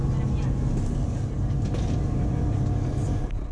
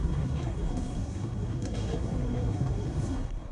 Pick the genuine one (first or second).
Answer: first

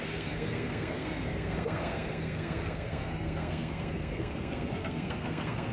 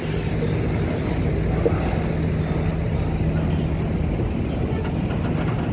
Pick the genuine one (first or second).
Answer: second